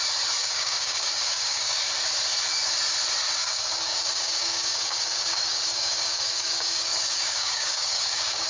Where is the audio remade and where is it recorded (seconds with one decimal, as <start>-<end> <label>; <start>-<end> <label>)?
0.0-0.4 recorded; 0.4-1.8 remade; 1.8-3.4 recorded; 3.4-8.5 remade